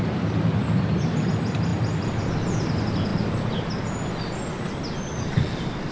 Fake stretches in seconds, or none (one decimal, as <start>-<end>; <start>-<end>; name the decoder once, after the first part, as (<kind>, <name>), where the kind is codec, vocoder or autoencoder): none